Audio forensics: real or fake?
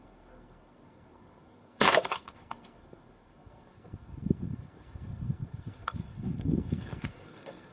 fake